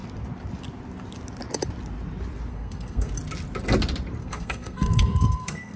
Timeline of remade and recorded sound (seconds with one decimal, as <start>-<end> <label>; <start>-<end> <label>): 0.0-2.5 recorded; 2.5-3.1 remade; 3.1-4.2 recorded; 4.2-5.8 remade